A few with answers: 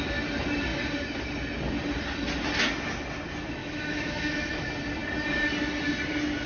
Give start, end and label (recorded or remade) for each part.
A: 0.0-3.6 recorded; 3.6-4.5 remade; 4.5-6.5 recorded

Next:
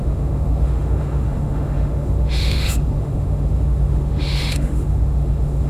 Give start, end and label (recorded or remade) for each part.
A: 0.0-5.7 remade

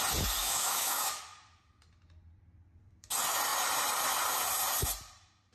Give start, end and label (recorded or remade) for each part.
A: 0.0-0.4 recorded; 0.4-1.2 remade; 1.2-5.5 recorded

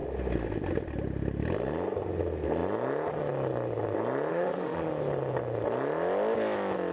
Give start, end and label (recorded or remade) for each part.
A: 0.0-4.3 recorded; 4.3-4.9 remade; 4.9-6.9 recorded

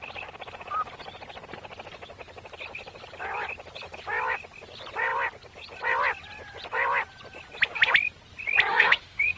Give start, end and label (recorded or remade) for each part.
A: 0.0-8.7 recorded; 8.7-9.4 remade